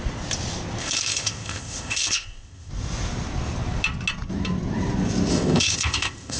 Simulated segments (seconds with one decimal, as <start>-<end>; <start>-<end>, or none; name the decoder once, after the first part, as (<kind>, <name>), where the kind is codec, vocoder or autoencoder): 0.8-2.7 (codec, ZipCodec); 5.3-6.4